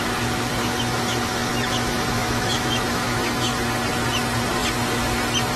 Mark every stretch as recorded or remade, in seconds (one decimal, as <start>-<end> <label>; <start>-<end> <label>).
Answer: 0.0-0.6 recorded; 0.6-3.6 remade; 3.6-5.6 recorded